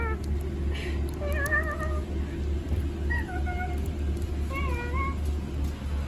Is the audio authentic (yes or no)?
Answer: yes